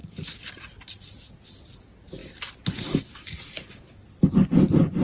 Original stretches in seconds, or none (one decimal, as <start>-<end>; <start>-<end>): 0.0-5.0